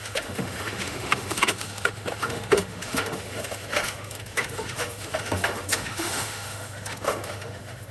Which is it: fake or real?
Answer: fake